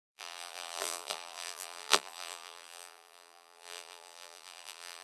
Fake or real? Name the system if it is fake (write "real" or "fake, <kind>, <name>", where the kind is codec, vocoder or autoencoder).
fake, vocoder, BigVGAN v2